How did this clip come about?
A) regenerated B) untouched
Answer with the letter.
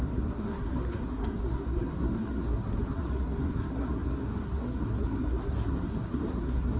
A